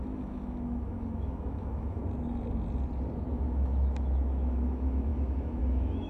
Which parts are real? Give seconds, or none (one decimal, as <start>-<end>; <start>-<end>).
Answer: 2.0-3.3